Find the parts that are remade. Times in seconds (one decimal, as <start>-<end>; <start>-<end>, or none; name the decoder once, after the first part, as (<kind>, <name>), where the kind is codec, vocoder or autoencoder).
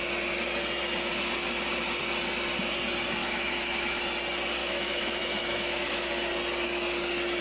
3.2-4.0 (autoencoder, DAC-VAE); 4.6-6.1